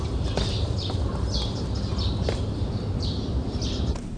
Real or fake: fake